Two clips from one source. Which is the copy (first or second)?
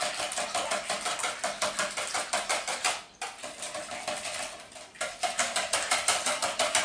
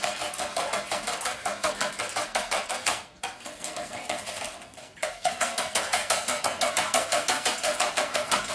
second